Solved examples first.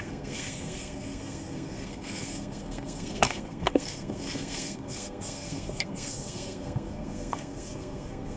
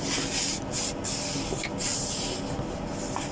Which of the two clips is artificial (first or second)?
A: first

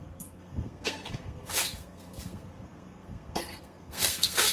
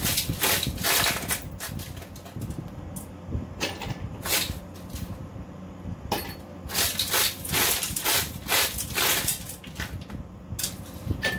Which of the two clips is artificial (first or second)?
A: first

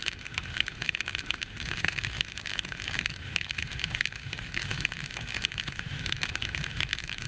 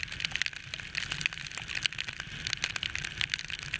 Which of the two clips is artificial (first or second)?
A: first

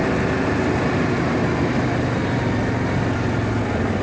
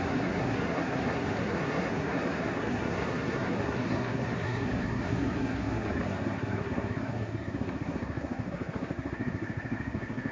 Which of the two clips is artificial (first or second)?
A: second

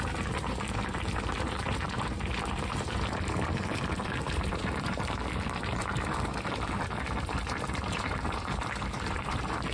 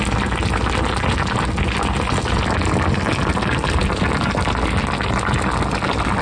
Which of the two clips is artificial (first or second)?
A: first